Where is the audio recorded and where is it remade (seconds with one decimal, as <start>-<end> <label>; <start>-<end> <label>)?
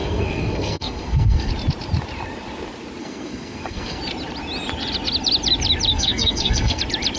0.0-1.5 remade; 1.5-3.0 recorded; 3.0-4.0 remade; 4.0-5.9 recorded; 5.9-6.8 remade; 6.8-7.2 recorded